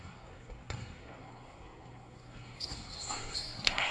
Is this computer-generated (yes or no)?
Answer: yes